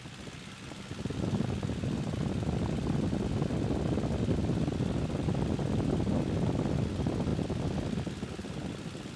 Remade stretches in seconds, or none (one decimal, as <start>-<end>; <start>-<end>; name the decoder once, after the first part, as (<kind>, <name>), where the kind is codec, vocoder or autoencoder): none